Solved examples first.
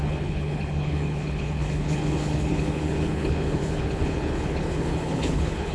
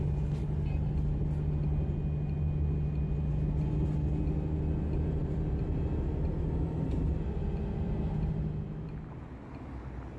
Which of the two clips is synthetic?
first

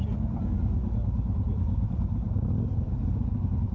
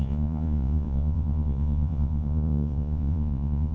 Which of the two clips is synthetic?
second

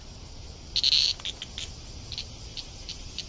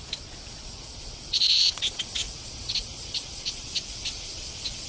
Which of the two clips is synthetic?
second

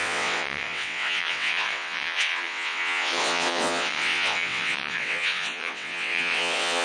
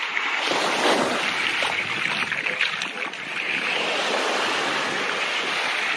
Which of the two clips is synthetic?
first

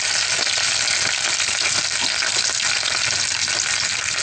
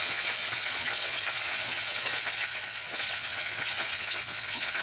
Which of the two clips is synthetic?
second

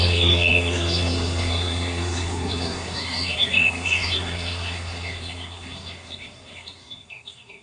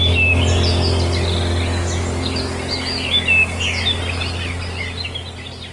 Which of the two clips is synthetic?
first